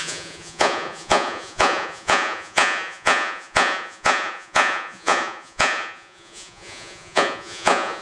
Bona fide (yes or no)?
no